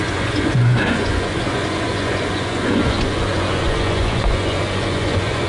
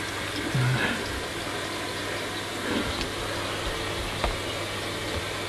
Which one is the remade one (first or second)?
first